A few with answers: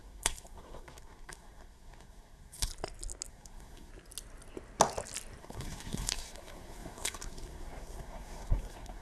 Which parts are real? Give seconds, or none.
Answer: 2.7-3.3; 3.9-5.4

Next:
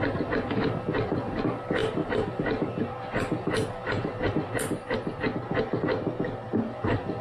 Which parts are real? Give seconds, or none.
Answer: 0.0-7.2